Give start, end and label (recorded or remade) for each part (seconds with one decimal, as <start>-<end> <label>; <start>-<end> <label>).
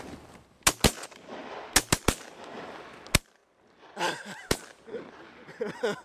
0.0-6.0 recorded